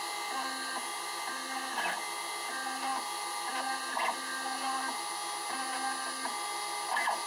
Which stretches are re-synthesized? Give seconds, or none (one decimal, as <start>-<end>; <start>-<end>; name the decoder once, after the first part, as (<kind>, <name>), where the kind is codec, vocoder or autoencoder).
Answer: none

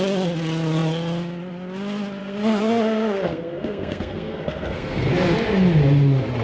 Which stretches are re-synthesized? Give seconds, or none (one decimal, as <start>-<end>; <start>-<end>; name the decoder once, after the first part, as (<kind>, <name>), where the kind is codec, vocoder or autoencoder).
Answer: 2.2-5.1 (codec, SNAC)

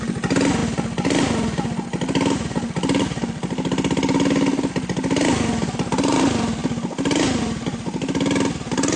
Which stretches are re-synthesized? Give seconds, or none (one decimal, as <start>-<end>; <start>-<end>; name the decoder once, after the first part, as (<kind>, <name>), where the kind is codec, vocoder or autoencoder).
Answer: none

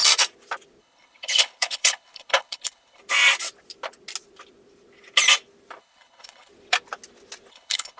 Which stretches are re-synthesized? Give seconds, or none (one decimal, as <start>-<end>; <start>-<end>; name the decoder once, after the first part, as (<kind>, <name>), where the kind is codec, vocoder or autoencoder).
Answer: 0.8-3.0 (codec, HILCodec); 5.8-6.5; 7.5-8.0

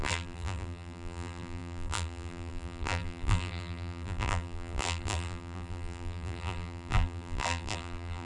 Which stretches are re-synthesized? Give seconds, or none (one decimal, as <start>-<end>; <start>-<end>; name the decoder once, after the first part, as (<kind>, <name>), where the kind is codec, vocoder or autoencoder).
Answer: 0.0-8.3 (vocoder, BigVGAN v2)

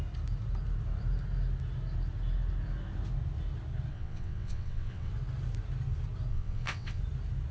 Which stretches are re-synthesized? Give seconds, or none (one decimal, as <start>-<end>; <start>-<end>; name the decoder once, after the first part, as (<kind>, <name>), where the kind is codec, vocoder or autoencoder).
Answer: 3.9-5.1 (vocoder, WaveNeXt); 6.3-7.0